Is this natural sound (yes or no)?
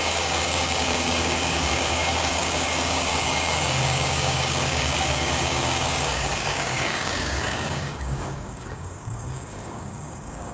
no